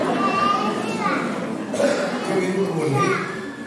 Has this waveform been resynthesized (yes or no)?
no